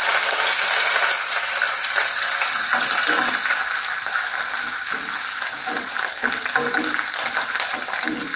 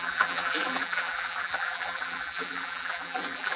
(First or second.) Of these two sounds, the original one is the first